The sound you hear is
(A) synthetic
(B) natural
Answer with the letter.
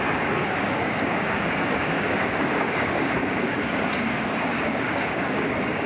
A